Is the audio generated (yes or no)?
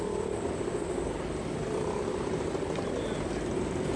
no